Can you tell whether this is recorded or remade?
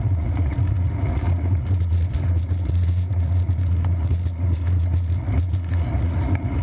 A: remade